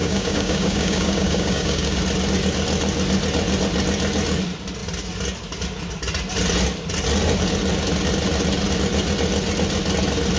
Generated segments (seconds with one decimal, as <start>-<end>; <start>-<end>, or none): 0.0-2.0

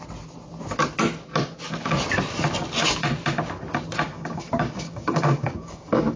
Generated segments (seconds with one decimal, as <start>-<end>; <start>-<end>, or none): 4.1-6.2

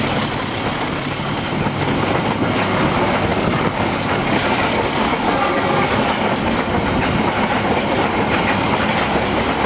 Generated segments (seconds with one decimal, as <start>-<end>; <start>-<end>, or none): 3.3-6.8

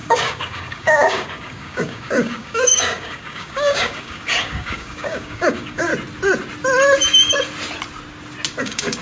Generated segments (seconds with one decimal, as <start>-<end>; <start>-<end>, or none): 0.0-5.9; 8.6-9.0

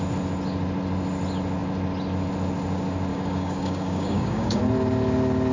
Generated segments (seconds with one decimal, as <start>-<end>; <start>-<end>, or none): 3.1-4.6

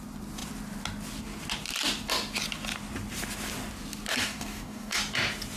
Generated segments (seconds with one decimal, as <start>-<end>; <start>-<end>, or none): 4.2-5.0